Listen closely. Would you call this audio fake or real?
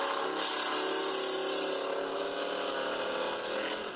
real